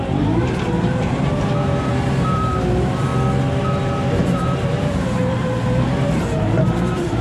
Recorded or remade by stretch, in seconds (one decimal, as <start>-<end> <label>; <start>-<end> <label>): 0.0-3.1 remade; 3.1-3.6 recorded; 3.6-7.2 remade